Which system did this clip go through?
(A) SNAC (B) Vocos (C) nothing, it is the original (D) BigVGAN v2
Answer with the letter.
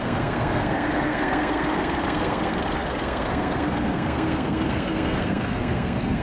A